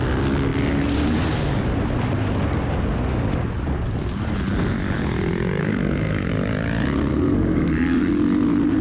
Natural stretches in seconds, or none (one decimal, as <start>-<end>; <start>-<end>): 0.0-5.6; 6.3-7.1; 8.1-8.8